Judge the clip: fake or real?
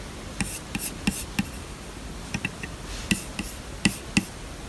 real